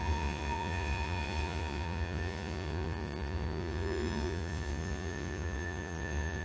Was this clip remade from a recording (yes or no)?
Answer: yes